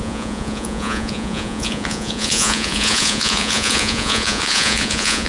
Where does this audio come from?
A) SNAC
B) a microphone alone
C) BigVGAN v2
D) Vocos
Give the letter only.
D